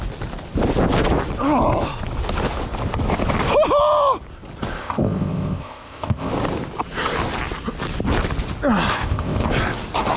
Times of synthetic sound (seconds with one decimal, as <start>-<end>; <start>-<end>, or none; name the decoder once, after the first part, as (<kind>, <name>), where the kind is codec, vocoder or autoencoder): 4.8-6.3 (codec, ZipCodec); 8.9-9.5